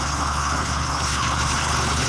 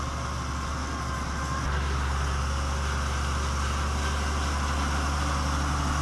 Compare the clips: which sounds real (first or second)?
second